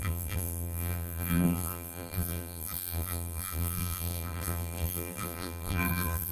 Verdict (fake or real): fake